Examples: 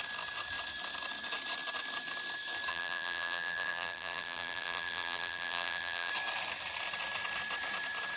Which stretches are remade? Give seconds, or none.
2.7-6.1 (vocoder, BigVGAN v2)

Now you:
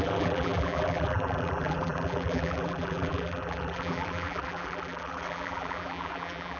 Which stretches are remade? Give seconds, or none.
0.0-6.6 (vocoder, BigVGAN v2)

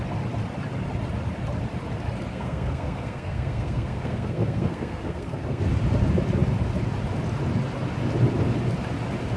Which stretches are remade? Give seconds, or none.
2.3-5.6 (codec, SNAC)

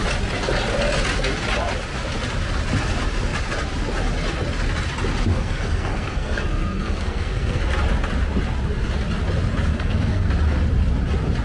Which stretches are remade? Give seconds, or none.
5.3-7.6 (codec, SNAC); 9.7-10.3

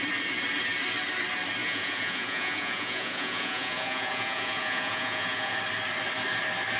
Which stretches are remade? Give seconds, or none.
1.6-5.6 (vocoder, Vocos)

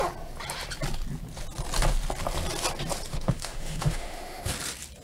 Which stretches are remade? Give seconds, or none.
3.1-4.5 (autoencoder, DAC-VAE)